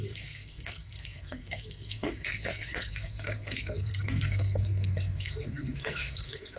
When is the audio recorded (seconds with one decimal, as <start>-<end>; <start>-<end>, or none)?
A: none